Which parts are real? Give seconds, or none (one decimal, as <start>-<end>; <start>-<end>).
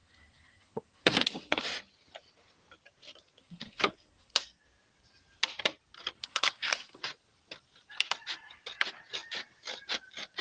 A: 1.6-3.4; 4.6-6.2; 7.0-10.4